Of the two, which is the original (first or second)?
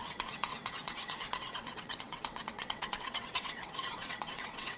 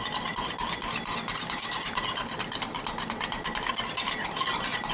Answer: second